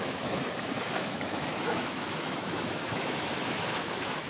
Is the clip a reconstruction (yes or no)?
yes